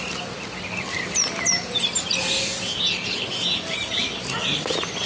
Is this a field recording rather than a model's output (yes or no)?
yes